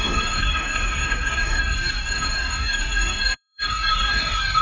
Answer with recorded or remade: remade